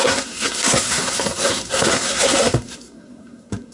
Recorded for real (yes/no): no